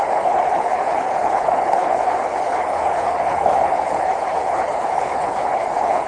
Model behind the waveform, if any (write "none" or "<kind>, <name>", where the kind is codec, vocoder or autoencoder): codec, HILCodec